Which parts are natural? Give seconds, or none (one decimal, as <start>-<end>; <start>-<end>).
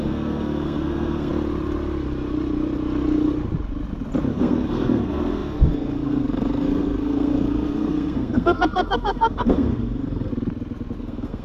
1.3-4.3; 10.3-11.0